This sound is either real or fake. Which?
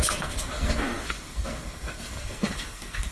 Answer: fake